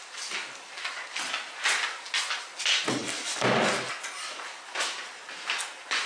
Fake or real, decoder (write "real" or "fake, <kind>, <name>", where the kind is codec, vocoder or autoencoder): real